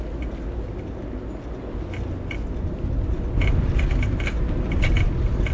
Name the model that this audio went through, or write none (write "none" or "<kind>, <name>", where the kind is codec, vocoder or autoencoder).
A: none